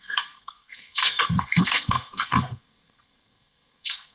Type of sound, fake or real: fake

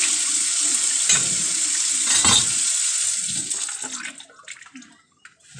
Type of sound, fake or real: real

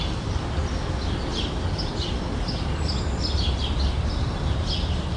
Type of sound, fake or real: real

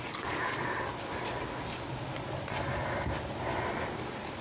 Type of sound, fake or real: real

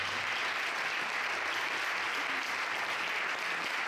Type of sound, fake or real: real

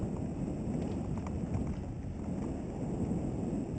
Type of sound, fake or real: real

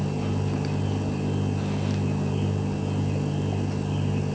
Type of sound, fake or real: real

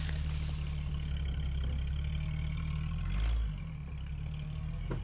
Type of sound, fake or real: real